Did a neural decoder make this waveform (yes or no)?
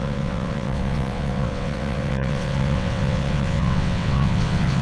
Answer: yes